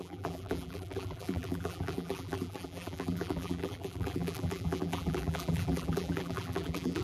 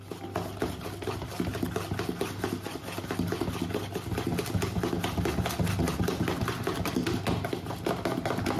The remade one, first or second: first